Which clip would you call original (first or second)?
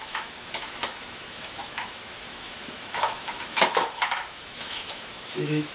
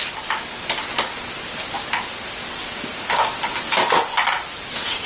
second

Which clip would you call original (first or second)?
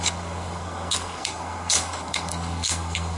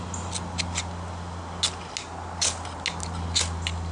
second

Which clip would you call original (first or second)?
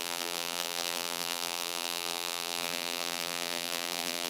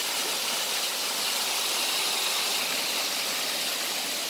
second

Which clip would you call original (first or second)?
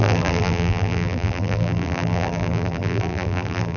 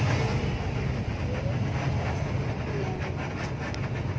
second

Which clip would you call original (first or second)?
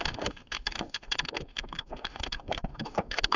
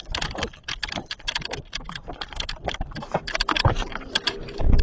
second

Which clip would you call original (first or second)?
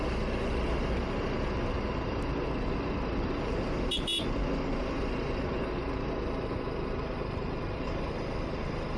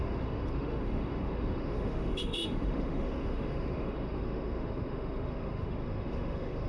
first